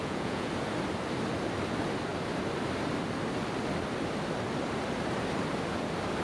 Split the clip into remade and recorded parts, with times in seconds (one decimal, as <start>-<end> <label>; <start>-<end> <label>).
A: 0.0-0.5 remade; 0.5-6.2 recorded